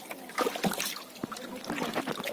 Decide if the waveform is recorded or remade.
recorded